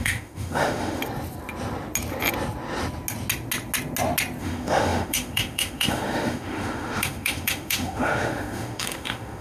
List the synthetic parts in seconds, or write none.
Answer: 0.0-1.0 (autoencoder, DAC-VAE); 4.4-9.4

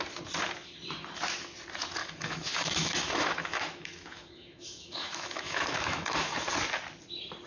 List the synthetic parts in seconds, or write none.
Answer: 2.0-6.5 (autoencoder, DAC-VAE)